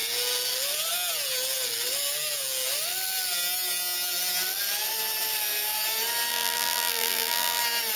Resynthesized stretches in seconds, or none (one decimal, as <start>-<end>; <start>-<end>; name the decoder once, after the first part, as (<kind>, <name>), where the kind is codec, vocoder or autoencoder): 6.3-7.6 (vocoder, BigVGAN v2)